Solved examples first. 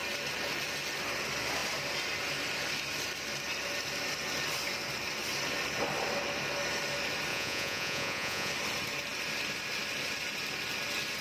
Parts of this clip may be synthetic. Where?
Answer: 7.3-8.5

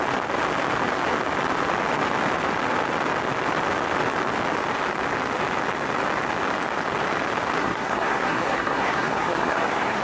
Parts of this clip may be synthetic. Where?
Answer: 7.6-10.0

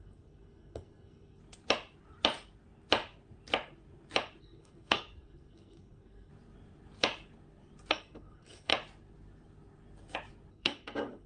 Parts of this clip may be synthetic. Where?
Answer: 0.0-1.4; 4.4-6.3; 7.9-8.7; 10.5-11.3

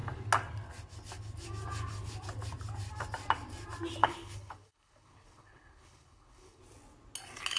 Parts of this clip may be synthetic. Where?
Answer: 4.0-6.6

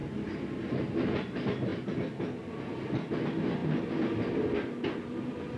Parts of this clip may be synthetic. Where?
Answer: none

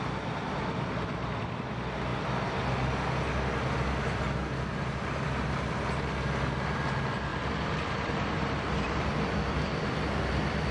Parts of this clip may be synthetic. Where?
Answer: 7.3-10.0